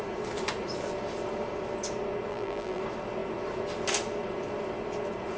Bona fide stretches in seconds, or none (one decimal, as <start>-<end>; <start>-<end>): 0.0-2.3; 2.8-5.4